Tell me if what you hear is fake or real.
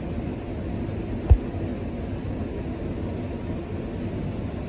real